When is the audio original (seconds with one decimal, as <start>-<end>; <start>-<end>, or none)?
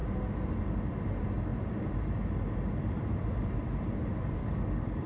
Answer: 0.0-4.4